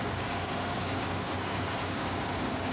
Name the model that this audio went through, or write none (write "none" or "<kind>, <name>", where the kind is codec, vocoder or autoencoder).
codec, DAC